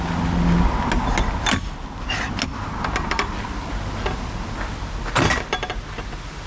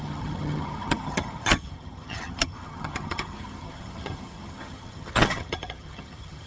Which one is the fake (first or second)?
second